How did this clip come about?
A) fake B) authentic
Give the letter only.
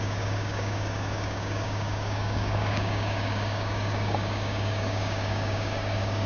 A